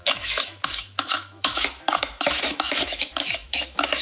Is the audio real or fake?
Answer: fake